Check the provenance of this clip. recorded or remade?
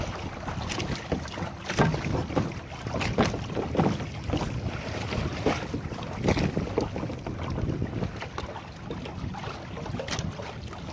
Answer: recorded